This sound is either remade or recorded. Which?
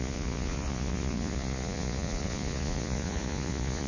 remade